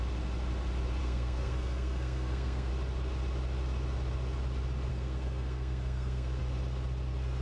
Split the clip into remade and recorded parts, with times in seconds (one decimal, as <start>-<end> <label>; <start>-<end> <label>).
0.0-1.0 recorded; 1.0-2.7 remade; 2.7-4.9 recorded; 4.9-6.4 remade; 6.4-7.4 recorded